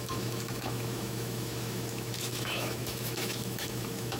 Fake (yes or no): yes